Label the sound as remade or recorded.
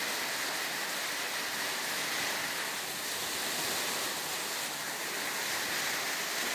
recorded